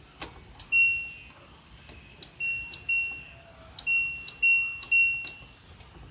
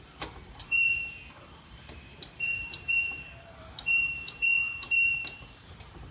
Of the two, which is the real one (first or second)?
first